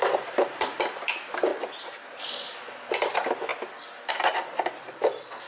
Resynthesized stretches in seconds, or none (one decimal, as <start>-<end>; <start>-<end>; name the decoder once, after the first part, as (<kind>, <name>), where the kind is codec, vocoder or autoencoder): 0.0-1.5 (vocoder, BigVGAN v2); 2.2-3.5; 4.1-5.5